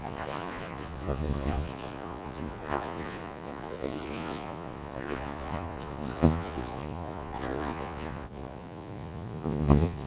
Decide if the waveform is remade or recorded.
remade